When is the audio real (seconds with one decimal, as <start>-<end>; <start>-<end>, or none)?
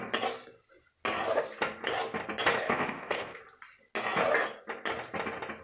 0.0-2.6; 3.4-5.6